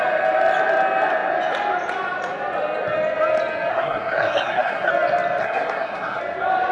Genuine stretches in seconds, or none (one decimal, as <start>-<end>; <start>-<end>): 0.0-3.7; 4.9-5.4; 6.2-6.7